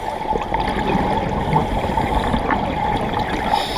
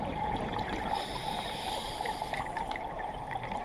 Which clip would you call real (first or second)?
first